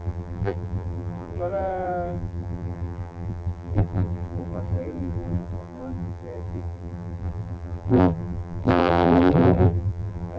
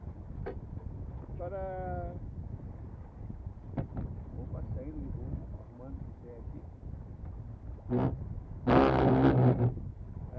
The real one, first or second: second